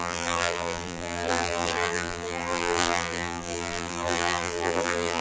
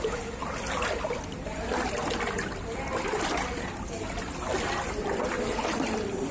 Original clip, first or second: second